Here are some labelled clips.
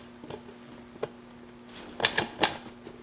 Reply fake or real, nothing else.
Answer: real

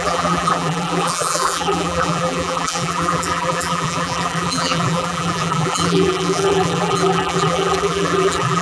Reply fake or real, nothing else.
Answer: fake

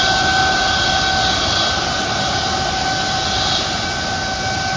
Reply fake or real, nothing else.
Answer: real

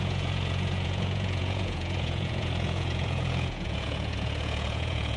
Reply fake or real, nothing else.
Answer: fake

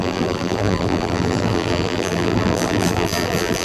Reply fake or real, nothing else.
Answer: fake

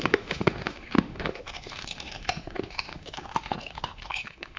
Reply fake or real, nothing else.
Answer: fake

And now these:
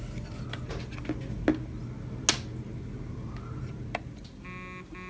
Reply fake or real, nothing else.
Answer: real